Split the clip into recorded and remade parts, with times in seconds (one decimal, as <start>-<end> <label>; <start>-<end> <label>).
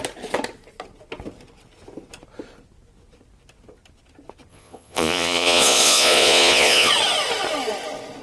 0.0-4.5 recorded; 4.5-6.9 remade; 6.9-8.2 recorded